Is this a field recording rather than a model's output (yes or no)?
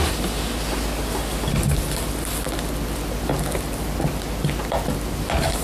yes